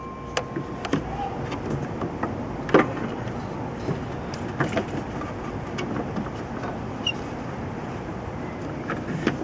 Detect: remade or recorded recorded